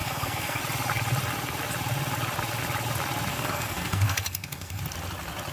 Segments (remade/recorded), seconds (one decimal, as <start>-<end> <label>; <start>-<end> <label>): 0.0-0.6 remade; 0.6-3.3 recorded; 3.3-4.8 remade; 4.8-5.5 recorded